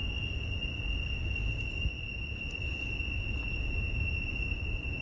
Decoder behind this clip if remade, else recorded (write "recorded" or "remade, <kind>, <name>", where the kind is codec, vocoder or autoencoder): recorded